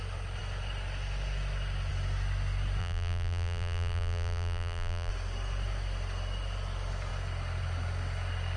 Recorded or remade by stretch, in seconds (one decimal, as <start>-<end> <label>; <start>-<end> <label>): 0.0-2.8 recorded; 2.8-5.1 remade; 5.1-8.6 recorded